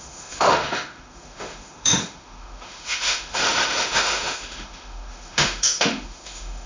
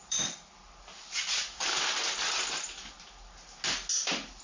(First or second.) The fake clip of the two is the first